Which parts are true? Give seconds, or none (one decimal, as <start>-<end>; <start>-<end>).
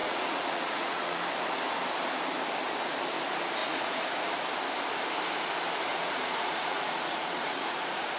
1.2-3.6; 4.3-5.9